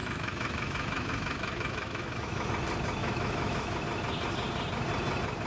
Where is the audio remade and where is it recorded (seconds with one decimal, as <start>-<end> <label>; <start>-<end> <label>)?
0.0-2.5 remade; 2.5-3.0 recorded; 3.0-3.8 remade; 3.8-5.5 recorded